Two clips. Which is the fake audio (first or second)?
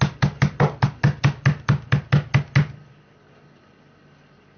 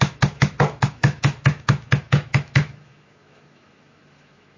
second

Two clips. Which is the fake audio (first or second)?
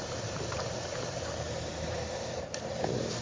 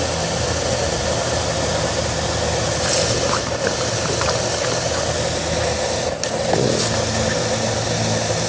first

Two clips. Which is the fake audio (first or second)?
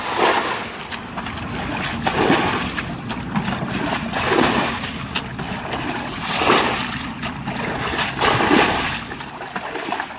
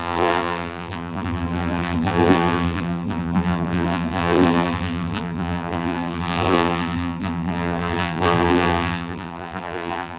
second